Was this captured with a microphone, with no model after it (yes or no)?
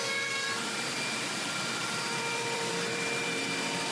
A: no